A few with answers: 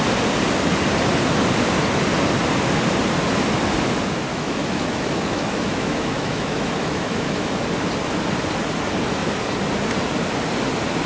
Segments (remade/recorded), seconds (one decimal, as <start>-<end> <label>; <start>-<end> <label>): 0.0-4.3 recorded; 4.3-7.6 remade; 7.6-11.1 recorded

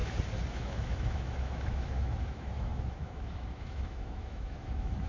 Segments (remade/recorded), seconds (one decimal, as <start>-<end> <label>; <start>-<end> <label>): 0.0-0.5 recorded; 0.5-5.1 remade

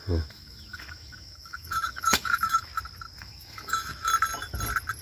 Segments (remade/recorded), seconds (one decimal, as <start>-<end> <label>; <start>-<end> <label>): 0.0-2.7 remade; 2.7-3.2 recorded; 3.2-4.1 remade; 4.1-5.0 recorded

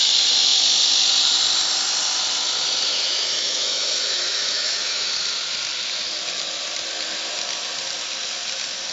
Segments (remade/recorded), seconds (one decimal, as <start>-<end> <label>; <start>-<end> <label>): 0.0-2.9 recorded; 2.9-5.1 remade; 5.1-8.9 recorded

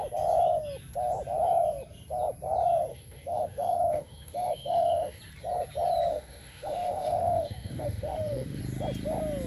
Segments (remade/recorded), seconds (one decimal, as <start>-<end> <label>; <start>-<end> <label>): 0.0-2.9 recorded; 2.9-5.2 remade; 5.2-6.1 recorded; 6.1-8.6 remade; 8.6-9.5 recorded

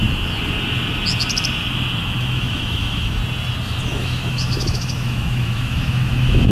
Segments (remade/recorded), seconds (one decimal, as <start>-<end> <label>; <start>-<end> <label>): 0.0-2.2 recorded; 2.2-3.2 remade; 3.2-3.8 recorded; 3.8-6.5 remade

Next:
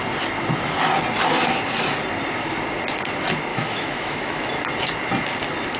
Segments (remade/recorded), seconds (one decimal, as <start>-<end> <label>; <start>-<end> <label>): 0.0-3.5 recorded; 3.5-4.4 remade; 4.4-5.8 recorded